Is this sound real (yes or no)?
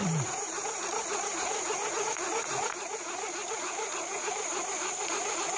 no